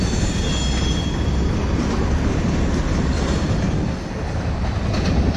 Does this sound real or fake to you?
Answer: real